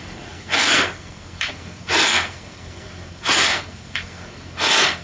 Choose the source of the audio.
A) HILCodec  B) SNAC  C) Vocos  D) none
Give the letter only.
B